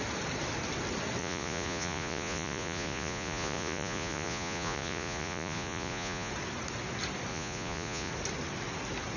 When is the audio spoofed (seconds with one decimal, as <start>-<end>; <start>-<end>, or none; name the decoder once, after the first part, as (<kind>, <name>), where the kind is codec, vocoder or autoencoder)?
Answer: 1.2-6.3 (vocoder, Vocos); 7.3-8.1